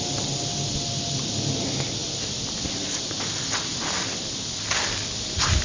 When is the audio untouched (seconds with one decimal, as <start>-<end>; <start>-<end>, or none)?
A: 0.0-5.6